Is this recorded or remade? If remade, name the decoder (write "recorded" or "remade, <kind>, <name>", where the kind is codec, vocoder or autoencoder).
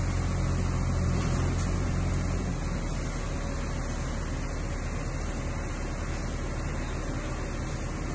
recorded